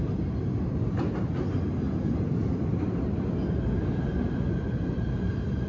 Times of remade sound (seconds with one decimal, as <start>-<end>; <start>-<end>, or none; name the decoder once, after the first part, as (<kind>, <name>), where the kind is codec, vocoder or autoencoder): none